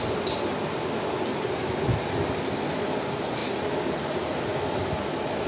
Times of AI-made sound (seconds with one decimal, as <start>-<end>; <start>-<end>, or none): none